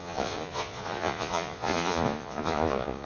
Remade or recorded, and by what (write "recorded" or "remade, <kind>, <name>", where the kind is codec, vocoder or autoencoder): remade, vocoder, Vocos